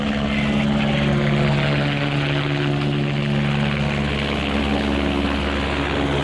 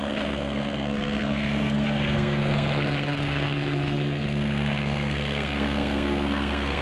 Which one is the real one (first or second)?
first